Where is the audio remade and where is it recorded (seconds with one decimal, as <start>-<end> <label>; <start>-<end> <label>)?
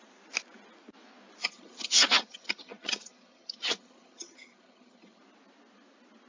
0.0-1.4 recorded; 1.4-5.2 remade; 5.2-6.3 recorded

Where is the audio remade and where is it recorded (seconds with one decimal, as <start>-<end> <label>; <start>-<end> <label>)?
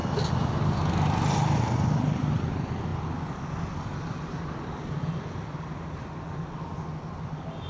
0.0-7.7 recorded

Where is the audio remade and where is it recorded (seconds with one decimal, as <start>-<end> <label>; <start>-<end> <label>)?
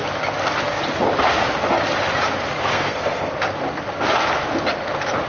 0.0-2.7 recorded; 2.7-3.3 remade; 3.3-5.3 recorded